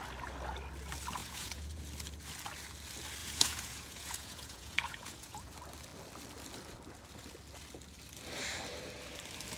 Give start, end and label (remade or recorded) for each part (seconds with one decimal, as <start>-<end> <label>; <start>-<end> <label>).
0.0-1.2 recorded; 1.2-1.8 remade; 1.8-3.2 recorded; 3.2-5.5 remade; 5.5-9.6 recorded